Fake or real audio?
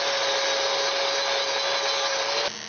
real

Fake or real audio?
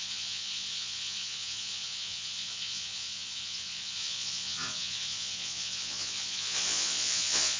fake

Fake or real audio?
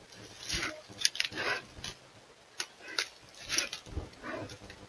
real